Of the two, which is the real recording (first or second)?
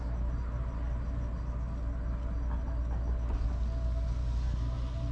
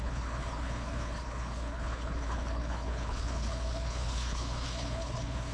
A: first